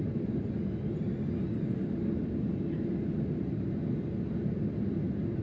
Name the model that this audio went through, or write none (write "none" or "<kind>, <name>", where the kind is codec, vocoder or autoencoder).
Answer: none